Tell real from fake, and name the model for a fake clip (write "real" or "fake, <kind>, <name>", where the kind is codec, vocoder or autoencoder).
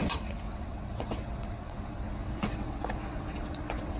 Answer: fake, vocoder, WaveNeXt